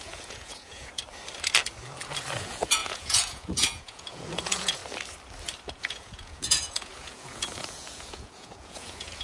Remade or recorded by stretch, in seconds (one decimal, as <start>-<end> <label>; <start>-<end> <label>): 0.0-1.0 remade; 1.0-2.4 recorded; 2.4-4.8 remade; 4.8-5.7 recorded; 5.7-9.2 remade